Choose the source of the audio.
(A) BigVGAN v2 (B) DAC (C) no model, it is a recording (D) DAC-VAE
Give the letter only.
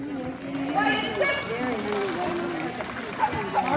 C